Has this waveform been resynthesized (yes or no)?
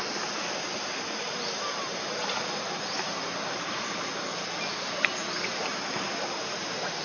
no